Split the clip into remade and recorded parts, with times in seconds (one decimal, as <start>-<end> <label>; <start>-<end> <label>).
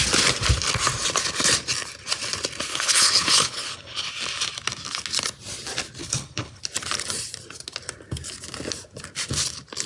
0.0-2.7 recorded; 2.7-4.1 remade; 4.1-6.0 recorded; 6.0-6.6 remade; 6.6-9.9 recorded